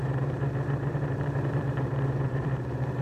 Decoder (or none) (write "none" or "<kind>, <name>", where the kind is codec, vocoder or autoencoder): vocoder, BigVGAN v2